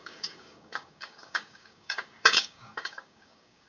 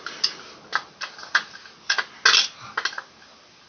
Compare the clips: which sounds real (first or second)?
second